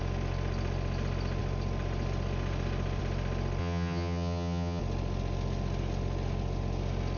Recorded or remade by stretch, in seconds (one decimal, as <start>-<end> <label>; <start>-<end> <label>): 0.0-3.6 recorded; 3.6-4.8 remade; 4.8-7.2 recorded